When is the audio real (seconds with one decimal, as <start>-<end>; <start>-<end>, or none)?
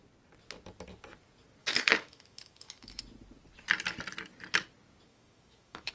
0.0-1.6; 3.0-5.1